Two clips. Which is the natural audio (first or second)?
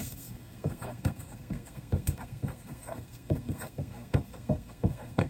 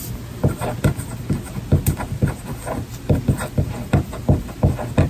second